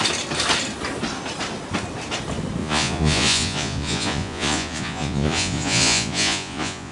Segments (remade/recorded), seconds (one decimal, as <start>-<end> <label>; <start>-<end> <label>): 0.0-2.6 recorded; 2.6-6.9 remade